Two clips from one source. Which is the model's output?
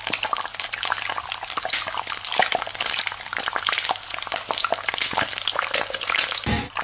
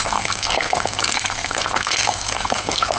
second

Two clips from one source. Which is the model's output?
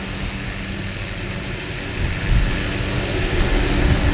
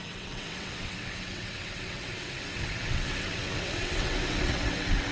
second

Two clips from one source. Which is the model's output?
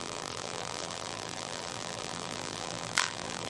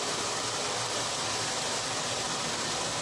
first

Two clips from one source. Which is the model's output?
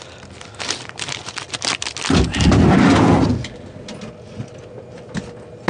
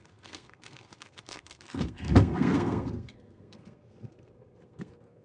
second